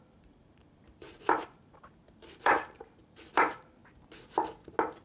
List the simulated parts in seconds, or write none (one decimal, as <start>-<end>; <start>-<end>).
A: 0.0-3.8